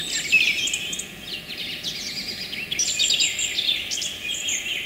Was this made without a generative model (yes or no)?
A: yes